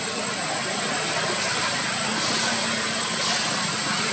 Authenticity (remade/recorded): recorded